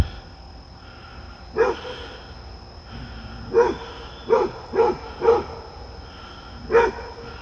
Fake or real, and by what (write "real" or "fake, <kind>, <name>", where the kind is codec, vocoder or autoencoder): real